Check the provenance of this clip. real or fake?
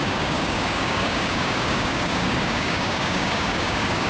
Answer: fake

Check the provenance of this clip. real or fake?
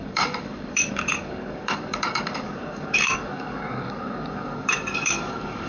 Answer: fake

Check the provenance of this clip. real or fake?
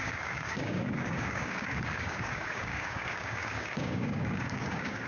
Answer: fake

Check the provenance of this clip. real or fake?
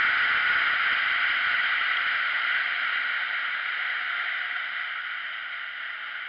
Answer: real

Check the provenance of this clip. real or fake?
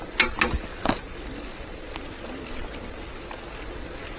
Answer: real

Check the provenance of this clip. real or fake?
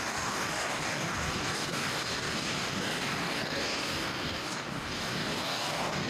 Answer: fake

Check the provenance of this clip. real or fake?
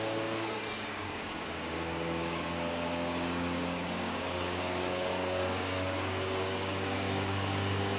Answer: fake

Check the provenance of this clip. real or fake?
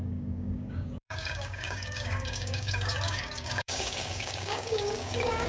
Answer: fake